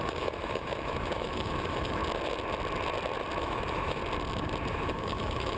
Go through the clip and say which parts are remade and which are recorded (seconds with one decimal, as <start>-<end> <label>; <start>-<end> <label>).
0.0-2.0 remade; 2.0-3.4 recorded; 3.4-4.0 remade; 4.0-4.7 recorded; 4.7-5.6 remade